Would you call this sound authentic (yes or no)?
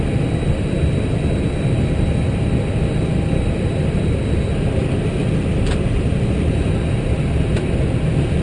yes